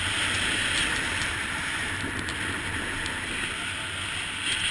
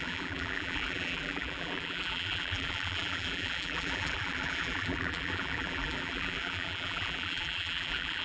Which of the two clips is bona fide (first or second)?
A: first